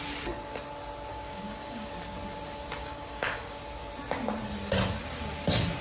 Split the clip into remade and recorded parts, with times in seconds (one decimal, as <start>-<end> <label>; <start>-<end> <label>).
0.0-1.1 recorded; 1.1-1.9 remade; 1.9-2.8 recorded; 2.8-3.6 remade; 3.6-5.8 recorded